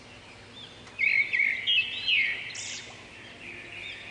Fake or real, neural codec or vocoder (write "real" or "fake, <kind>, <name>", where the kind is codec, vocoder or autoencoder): real